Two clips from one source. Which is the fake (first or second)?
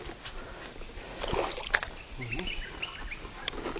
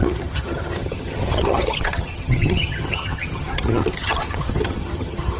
second